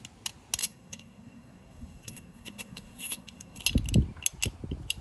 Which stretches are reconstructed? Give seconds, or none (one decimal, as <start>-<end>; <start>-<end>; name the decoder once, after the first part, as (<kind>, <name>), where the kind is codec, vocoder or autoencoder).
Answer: 0.6-3.6 (codec, SNAC)